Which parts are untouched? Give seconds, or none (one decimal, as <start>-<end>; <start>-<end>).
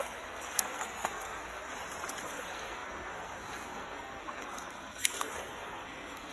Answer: 1.7-2.2